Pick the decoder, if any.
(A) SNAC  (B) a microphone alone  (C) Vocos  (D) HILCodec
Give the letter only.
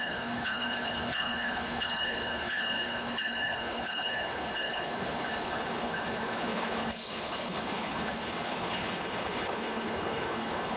D